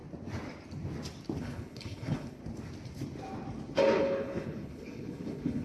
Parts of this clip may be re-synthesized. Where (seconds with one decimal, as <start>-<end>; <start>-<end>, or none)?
1.4-2.4; 4.0-5.6

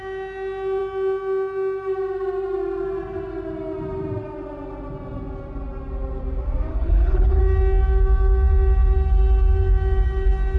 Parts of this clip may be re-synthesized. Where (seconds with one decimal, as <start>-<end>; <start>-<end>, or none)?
6.7-7.4

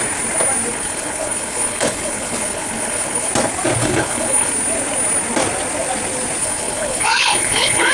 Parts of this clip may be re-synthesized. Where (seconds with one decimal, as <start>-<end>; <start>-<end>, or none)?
0.7-3.3; 3.8-4.5; 6.4-7.9

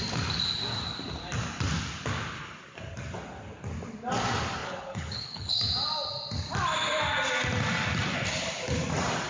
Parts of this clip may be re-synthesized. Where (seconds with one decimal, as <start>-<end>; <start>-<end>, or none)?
4.6-5.6

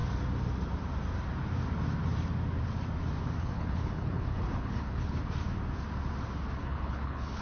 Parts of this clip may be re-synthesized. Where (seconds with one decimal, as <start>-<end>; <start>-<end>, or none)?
3.4-5.2; 6.6-7.4